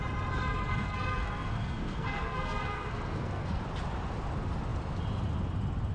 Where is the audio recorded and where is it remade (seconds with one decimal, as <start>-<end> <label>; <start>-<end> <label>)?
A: 0.0-0.4 recorded; 0.4-3.6 remade; 3.6-5.9 recorded